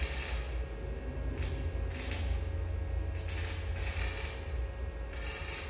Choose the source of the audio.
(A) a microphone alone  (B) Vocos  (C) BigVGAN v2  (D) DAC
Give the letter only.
A